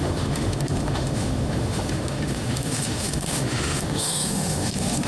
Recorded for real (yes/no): no